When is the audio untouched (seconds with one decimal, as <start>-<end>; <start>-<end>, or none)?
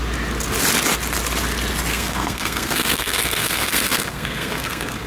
0.0-1.9